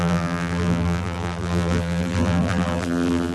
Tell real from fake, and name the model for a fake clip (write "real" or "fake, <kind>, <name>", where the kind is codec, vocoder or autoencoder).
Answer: fake, vocoder, BigVGAN v2